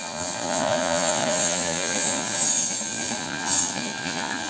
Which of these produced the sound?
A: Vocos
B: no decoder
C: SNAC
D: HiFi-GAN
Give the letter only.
A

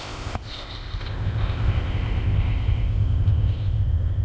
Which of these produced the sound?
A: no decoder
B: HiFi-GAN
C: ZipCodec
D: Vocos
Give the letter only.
C